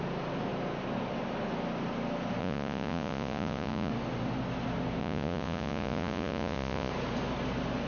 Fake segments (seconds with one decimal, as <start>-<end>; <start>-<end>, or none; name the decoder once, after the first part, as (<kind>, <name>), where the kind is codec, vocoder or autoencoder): 2.4-3.9 (vocoder, Vocos); 5.0-6.9